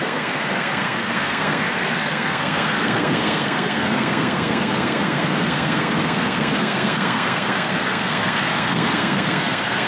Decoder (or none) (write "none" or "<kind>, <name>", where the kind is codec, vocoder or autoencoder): codec, SNAC